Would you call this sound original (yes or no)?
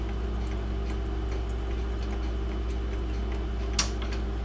yes